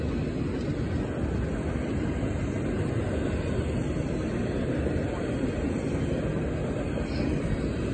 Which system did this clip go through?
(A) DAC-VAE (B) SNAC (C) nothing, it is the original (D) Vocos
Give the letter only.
C